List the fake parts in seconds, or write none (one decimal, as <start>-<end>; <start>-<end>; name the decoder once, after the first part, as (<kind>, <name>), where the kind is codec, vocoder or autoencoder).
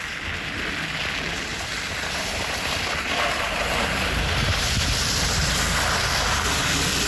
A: 1.5-5.1 (vocoder, BigVGAN v2)